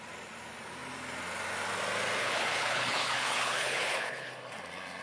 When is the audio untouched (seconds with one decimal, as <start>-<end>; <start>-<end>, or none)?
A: 0.0-2.2; 4.3-5.0